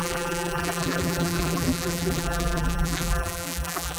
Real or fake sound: fake